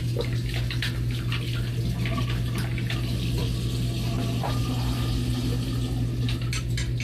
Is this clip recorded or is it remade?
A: recorded